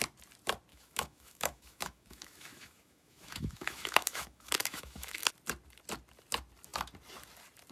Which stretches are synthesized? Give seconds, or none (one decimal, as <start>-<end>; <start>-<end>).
0.7-5.3